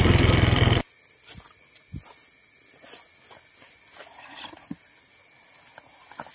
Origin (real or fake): real